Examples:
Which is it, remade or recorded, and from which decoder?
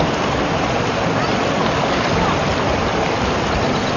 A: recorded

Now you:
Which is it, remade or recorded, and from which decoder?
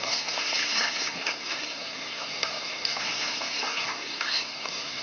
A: remade, codec, SNAC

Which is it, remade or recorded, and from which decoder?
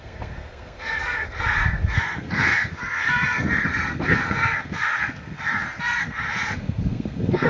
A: remade, codec, SNAC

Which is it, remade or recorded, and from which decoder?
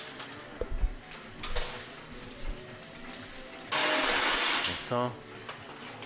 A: recorded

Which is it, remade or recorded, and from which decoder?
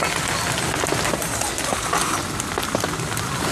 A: recorded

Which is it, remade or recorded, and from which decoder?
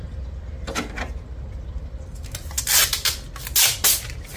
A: recorded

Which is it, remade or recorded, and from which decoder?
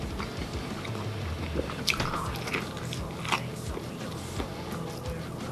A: recorded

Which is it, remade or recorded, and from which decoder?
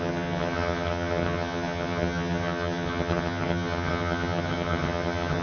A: remade, vocoder, HiFi-GAN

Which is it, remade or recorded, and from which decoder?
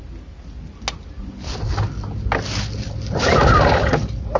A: recorded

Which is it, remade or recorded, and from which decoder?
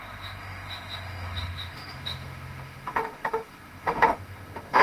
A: remade, autoencoder, DAC-VAE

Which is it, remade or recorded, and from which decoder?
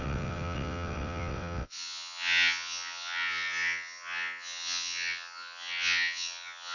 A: remade, vocoder, WaveNeXt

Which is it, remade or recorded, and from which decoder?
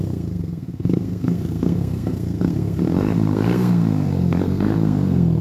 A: remade, codec, SNAC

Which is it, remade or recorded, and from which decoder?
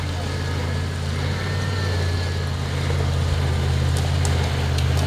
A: recorded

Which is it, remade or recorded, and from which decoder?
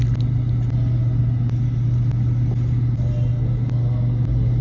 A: recorded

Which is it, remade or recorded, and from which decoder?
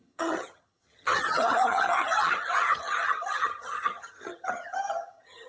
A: remade, vocoder, HiFi-GAN